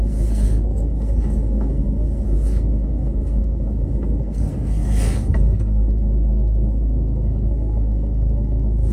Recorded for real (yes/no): no